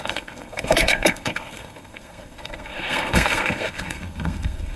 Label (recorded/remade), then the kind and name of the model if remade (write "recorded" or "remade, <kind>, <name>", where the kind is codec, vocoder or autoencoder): remade, codec, SNAC